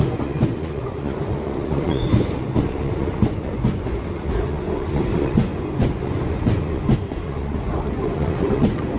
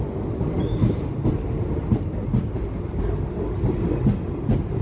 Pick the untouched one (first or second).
second